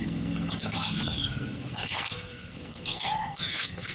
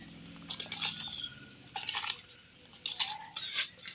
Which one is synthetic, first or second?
first